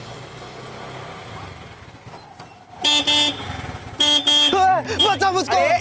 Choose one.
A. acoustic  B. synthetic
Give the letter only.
A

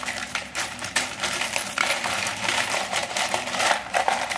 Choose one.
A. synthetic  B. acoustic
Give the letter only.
A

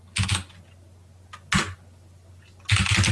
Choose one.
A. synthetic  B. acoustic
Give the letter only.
B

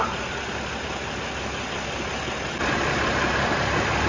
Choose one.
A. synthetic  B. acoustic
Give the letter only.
B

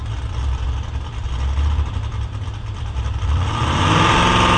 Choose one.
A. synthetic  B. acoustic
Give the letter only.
A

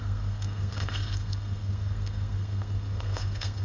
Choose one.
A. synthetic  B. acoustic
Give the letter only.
A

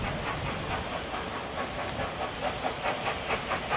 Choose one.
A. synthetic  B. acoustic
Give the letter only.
B